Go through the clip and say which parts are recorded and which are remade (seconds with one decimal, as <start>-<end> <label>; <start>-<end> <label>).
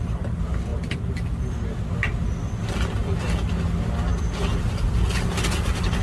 0.0-6.0 recorded